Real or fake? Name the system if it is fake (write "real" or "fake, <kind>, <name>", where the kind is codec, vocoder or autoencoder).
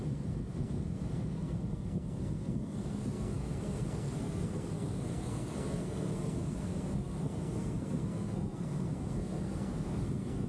fake, codec, SNAC